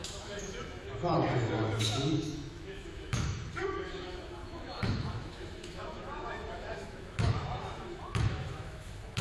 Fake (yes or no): yes